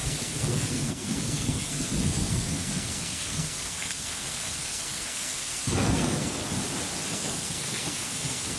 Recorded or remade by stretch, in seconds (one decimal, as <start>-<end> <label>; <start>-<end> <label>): 0.0-6.4 remade; 6.4-7.0 recorded; 7.0-8.6 remade

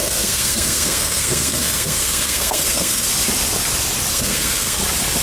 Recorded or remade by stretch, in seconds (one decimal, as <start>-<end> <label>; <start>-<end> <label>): 0.0-3.1 remade; 3.1-4.1 recorded; 4.1-4.8 remade; 4.8-5.2 recorded

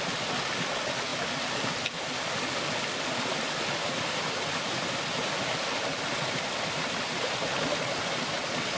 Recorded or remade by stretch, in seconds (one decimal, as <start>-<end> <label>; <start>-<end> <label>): 0.0-8.8 recorded

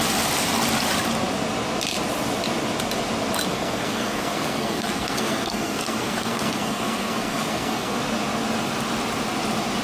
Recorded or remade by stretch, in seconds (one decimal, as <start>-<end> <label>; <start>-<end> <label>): 0.0-3.5 recorded; 3.5-8.0 remade; 8.0-9.8 recorded

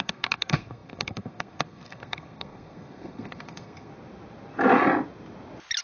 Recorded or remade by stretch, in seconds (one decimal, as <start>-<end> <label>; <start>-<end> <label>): 0.0-3.9 remade; 3.9-5.8 recorded